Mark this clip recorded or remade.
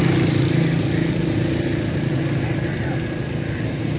recorded